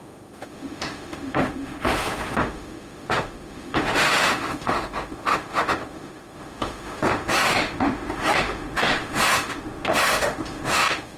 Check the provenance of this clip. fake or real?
fake